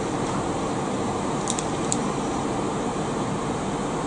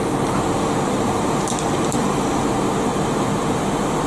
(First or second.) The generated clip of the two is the first